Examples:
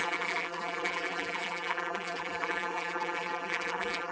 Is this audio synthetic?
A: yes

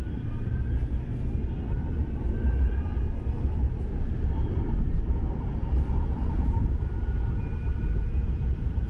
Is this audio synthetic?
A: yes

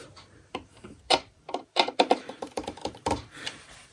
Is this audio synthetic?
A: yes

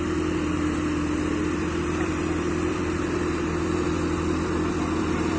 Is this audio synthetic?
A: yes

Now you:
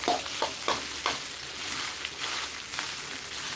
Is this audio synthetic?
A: no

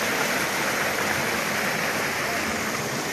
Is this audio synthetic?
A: no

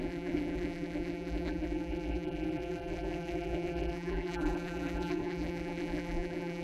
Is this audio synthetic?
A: yes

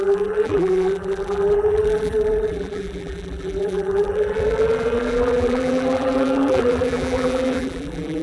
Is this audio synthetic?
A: yes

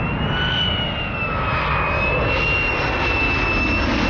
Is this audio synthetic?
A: no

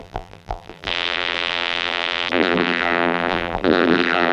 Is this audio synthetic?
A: yes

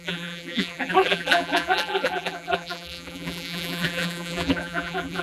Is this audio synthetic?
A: yes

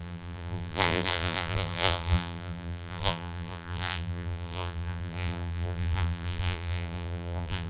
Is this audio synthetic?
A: yes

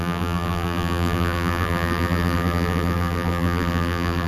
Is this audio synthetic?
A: yes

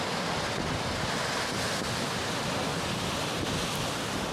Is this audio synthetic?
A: no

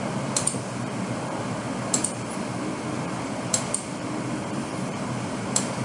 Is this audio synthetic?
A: yes